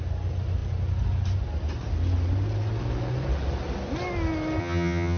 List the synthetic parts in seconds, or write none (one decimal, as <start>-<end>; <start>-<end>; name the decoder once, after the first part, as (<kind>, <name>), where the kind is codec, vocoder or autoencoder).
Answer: 4.6-5.2 (vocoder, HiFi-GAN)